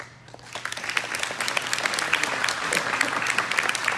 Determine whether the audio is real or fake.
real